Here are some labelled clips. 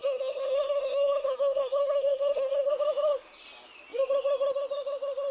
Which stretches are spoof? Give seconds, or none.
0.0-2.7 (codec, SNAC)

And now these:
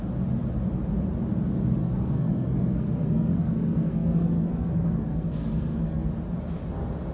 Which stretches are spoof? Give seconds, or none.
1.8-6.1 (codec, SNAC)

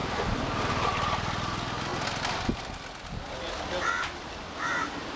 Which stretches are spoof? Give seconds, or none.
0.0-0.7 (vocoder, BigVGAN v2)